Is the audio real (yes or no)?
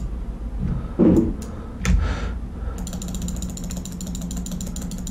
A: yes